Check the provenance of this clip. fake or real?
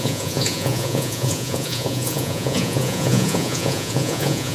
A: fake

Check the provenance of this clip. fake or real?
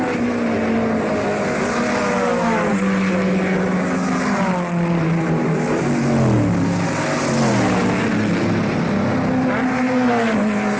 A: real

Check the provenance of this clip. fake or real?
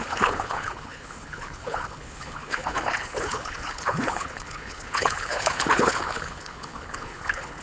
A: fake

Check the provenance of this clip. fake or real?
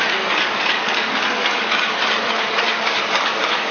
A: fake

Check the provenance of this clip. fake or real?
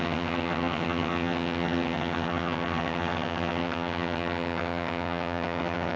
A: fake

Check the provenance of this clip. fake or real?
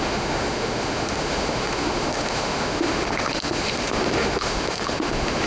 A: fake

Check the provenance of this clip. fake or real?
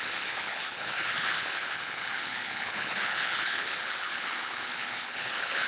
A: fake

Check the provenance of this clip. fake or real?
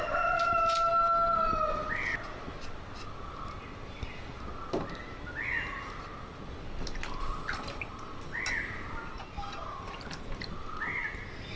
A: real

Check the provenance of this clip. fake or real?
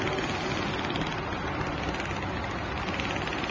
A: real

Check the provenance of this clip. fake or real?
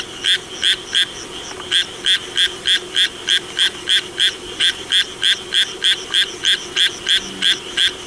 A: real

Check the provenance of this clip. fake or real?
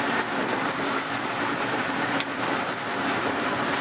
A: fake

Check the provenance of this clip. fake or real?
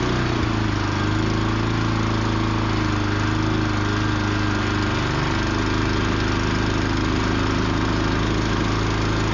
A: real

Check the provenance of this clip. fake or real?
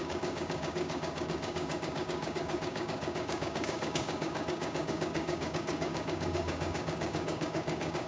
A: fake